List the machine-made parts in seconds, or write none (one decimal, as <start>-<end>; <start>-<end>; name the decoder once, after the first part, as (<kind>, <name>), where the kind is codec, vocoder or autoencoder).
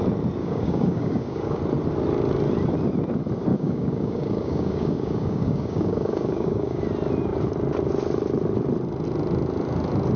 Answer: 0.4-1.6 (codec, DAC); 3.5-6.8